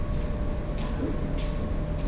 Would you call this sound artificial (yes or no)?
no